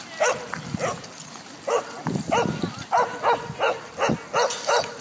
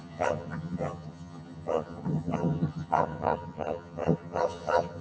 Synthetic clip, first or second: second